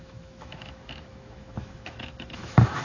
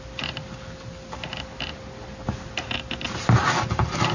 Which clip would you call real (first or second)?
second